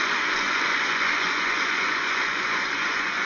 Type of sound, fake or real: fake